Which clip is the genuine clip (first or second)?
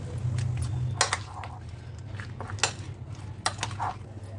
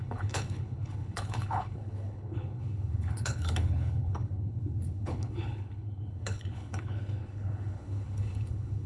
first